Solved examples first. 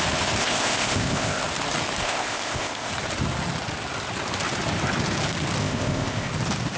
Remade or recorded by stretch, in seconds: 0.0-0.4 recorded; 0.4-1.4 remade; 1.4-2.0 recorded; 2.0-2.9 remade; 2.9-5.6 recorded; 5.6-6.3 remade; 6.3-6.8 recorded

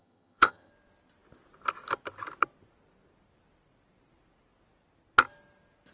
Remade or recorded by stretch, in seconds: 0.0-0.7 remade; 0.7-5.9 recorded

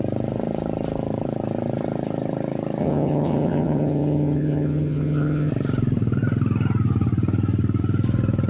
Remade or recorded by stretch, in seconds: 0.0-2.8 recorded; 2.8-5.5 remade; 5.5-8.5 recorded

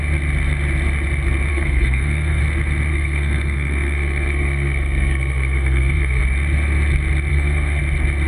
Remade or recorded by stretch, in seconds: 0.0-1.5 recorded; 1.5-2.4 remade; 2.4-2.9 recorded; 2.9-6.2 remade; 6.2-7.3 recorded; 7.3-7.8 remade; 7.8-8.3 recorded

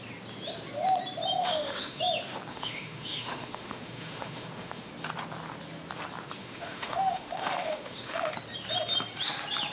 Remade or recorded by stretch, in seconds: 0.0-1.4 recorded; 1.4-2.0 remade; 2.0-2.5 recorded; 2.5-4.9 remade; 4.9-6.4 recorded; 6.4-8.3 remade; 8.3-9.7 recorded

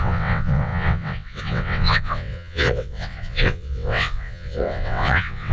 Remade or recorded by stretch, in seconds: 0.0-5.5 remade